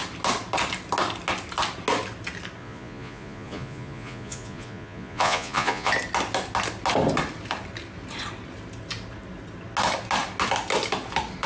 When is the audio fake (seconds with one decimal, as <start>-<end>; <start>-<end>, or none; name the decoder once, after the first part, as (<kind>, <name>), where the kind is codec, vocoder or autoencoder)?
2.6-5.9 (vocoder, Vocos)